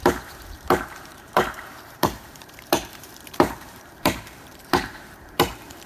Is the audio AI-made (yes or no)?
yes